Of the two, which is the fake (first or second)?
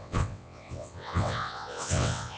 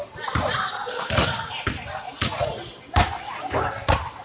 first